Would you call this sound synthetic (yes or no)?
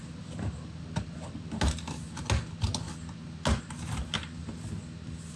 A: no